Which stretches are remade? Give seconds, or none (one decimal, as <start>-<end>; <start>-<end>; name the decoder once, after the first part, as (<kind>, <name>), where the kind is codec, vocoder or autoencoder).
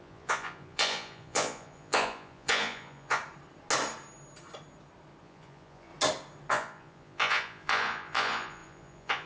0.0-3.2 (vocoder, Vocos); 5.2-5.9; 6.5-9.3